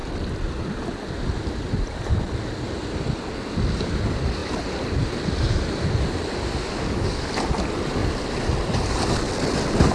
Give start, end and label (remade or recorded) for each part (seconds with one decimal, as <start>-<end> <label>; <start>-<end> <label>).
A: 0.0-6.7 recorded; 6.7-7.3 remade; 7.3-9.9 recorded